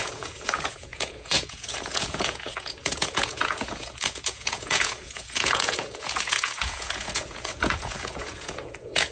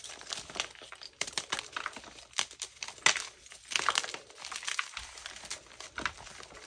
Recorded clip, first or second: second